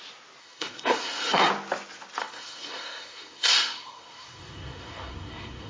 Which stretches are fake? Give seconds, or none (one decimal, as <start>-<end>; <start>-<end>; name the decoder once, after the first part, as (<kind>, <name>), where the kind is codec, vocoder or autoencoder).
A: 0.4-1.5 (codec, SNAC); 2.2-5.7